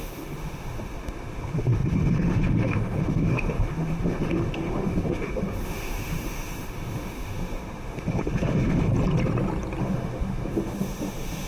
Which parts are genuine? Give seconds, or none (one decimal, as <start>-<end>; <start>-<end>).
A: 8.9-9.8